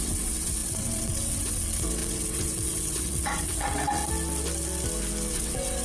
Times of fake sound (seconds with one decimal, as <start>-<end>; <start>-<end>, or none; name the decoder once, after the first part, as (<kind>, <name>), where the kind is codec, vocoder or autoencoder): 0.0-4.0 (vocoder, WaveNeXt); 5.3-5.8